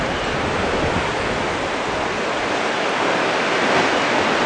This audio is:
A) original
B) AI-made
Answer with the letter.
A